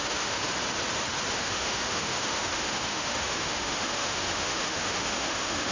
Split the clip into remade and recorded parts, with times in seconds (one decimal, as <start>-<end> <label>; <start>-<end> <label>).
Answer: 0.0-0.4 remade; 0.4-1.3 recorded; 1.3-5.7 remade